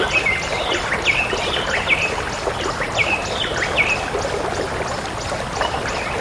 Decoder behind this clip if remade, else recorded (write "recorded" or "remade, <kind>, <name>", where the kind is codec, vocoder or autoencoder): recorded